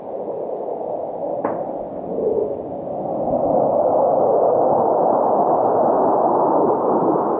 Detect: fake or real real